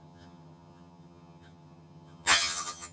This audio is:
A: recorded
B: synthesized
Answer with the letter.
B